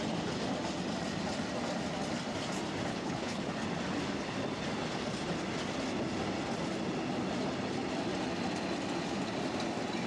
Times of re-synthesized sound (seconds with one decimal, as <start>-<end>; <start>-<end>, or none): 2.9-3.4

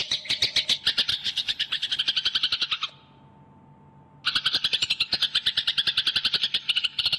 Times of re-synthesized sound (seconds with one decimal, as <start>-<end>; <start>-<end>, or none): 1.1-2.0

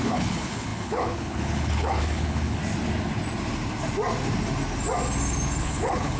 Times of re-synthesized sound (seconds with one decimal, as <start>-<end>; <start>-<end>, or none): 0.0-2.6; 5.6-6.2

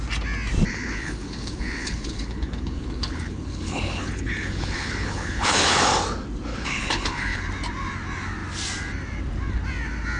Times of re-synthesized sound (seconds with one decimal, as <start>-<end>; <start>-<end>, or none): 0.7-5.8; 6.5-7.5

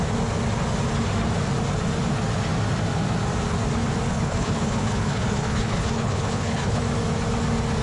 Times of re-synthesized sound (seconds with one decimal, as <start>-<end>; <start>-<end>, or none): 4.1-6.8

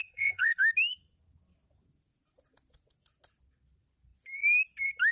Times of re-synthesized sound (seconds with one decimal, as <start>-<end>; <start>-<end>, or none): 0.0-0.6